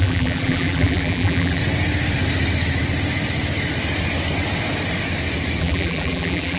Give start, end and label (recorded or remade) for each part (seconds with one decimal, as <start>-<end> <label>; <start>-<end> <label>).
0.0-1.6 remade; 1.6-5.6 recorded; 5.6-6.6 remade